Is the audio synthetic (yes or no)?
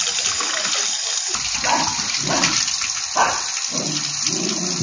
no